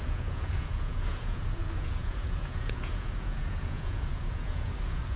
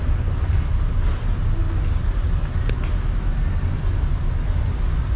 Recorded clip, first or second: second